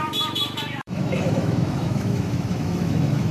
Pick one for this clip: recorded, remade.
remade